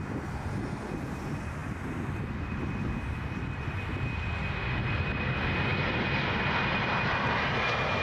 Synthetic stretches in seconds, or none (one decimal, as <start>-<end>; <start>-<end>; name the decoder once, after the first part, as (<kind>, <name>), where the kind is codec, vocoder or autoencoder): none